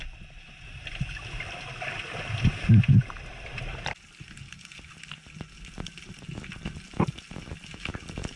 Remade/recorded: recorded